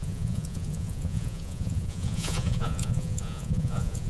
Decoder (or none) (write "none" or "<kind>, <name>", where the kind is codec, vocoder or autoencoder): vocoder, Vocos